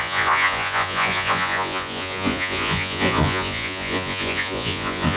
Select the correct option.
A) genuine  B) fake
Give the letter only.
B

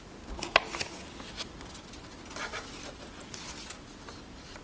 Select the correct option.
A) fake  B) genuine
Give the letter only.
B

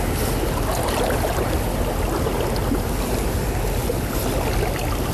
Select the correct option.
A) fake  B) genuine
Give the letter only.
B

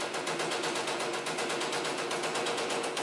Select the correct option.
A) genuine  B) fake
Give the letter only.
B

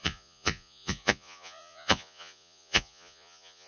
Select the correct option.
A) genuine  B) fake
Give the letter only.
B